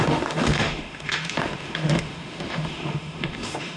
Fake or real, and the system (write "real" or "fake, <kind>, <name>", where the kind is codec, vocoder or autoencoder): fake, autoencoder, DAC-VAE